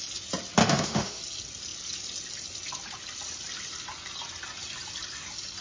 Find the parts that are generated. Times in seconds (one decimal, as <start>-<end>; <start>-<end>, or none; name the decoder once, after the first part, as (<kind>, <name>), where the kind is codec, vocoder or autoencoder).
0.6-1.2 (autoencoder, DAC-VAE)